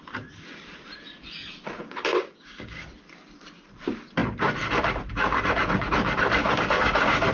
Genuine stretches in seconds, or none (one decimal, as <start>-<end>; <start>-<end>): 0.0-1.8; 2.8-6.4